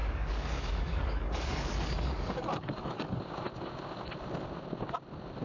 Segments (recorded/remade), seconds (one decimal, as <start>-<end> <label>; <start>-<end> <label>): 0.0-3.2 remade; 3.2-5.4 recorded